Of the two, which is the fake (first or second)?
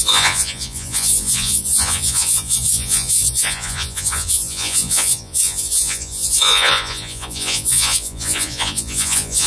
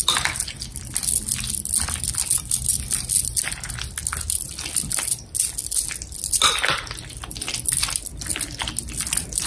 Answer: first